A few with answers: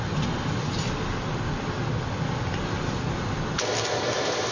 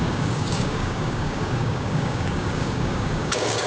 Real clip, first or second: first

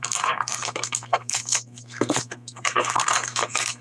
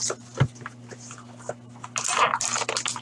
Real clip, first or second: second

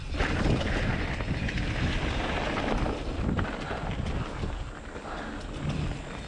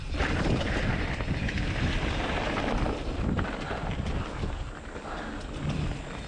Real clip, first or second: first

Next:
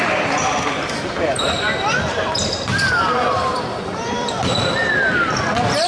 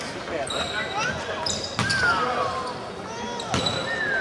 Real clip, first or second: second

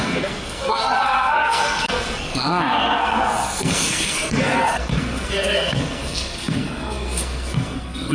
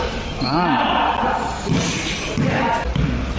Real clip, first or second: second